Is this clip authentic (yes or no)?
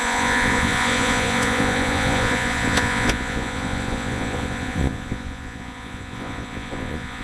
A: no